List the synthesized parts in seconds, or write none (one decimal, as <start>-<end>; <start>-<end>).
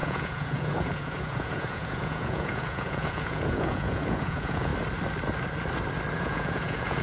0.0-4.7; 6.2-7.0